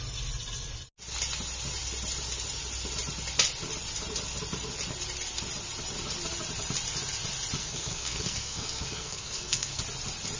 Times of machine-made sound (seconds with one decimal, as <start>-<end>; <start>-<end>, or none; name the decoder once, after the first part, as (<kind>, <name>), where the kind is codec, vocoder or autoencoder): 7.6-9.8 (codec, SNAC)